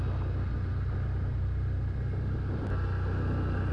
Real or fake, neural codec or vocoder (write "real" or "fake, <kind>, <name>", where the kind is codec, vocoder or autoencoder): real